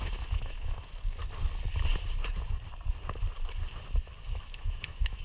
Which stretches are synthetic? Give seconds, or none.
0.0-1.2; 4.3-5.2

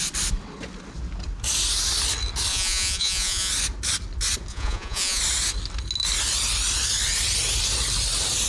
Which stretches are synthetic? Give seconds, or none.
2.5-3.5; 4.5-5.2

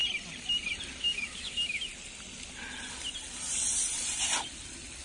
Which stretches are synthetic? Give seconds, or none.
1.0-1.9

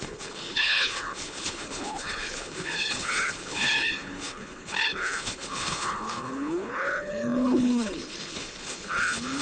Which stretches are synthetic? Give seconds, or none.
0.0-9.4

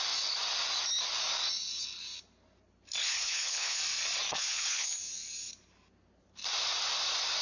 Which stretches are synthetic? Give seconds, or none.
3.0-3.8; 4.3-5.0